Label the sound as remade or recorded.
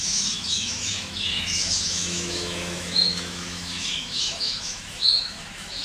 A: remade